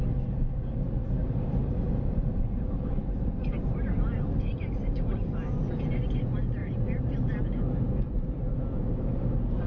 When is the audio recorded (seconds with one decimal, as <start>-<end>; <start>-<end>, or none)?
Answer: 0.0-1.6; 5.3-6.6; 7.4-9.7